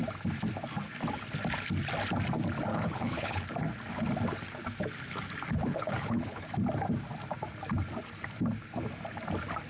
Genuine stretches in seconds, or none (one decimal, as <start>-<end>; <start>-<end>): 0.0-2.7; 3.5-5.7; 6.5-9.7